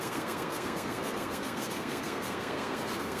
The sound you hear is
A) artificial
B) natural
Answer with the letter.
A